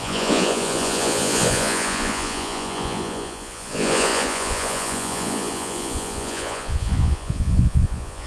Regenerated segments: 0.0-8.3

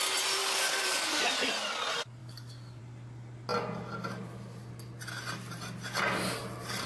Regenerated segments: 0.4-1.2; 2.2-2.8

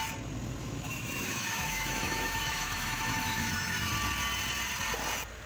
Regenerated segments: 0.6-3.9

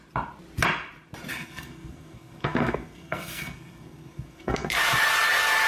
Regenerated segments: 1.3-4.7

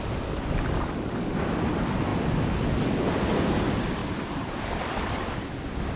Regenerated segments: 4.0-5.4

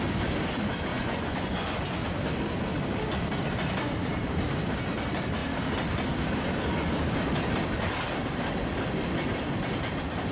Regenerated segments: 0.9-1.8

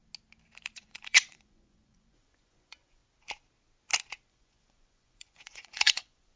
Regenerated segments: 0.7-3.0; 4.3-6.4

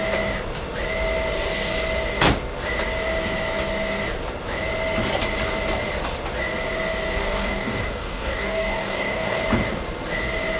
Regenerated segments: 7.2-9.4